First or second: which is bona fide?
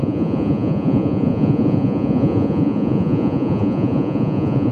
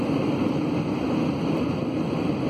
second